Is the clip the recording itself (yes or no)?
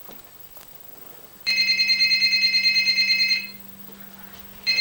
no